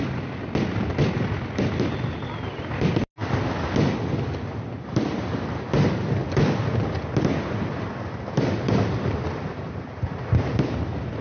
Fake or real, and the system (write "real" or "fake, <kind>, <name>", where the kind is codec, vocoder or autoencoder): real